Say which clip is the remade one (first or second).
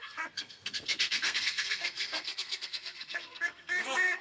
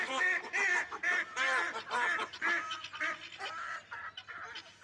first